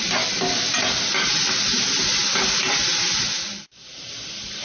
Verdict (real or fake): real